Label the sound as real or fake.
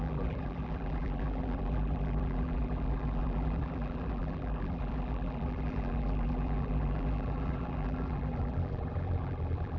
fake